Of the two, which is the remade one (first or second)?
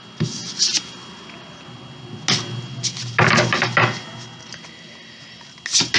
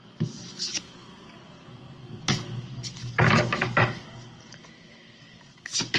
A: second